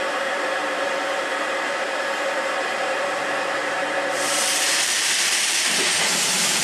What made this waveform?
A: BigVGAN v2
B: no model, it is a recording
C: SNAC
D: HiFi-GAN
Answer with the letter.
A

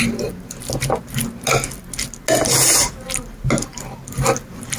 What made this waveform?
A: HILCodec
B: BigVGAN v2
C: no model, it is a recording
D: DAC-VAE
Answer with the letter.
C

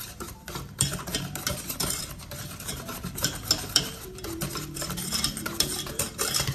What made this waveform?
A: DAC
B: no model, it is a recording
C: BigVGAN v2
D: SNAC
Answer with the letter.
C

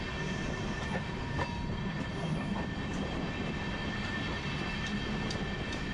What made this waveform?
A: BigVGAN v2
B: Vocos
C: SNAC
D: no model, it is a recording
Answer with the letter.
D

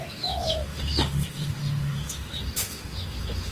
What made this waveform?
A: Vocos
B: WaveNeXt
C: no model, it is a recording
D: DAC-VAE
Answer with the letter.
D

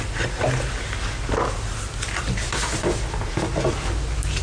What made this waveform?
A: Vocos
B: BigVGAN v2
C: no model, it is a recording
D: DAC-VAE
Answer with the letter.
C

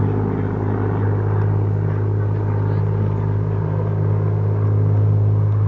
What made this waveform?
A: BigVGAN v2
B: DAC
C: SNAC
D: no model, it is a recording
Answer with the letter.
D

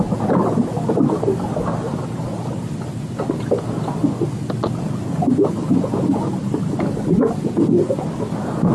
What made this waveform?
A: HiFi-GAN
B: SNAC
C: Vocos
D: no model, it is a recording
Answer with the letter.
D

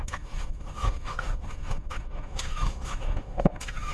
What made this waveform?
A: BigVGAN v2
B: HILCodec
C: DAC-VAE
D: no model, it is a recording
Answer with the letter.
C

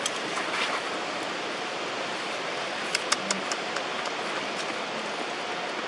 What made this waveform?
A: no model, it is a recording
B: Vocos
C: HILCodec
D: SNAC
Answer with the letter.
A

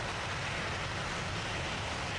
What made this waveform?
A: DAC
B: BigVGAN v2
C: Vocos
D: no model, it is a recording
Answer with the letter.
D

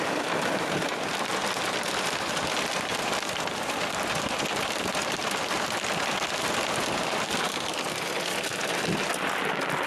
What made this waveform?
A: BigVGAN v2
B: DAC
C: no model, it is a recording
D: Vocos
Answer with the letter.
A